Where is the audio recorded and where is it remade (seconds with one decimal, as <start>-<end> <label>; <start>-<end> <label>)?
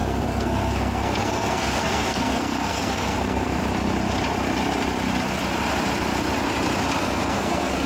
0.0-3.6 remade; 3.6-7.0 recorded; 7.0-7.9 remade